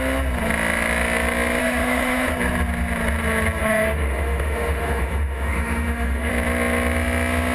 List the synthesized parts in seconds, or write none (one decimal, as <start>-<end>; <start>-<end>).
1.6-2.3; 3.6-6.3